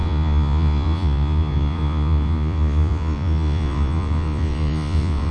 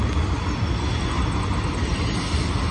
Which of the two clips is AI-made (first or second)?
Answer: first